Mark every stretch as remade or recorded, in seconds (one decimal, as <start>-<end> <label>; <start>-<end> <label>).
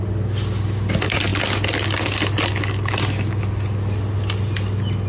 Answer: 0.0-5.1 recorded